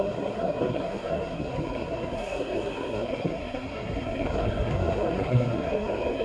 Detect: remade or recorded remade